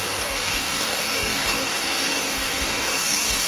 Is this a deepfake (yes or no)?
yes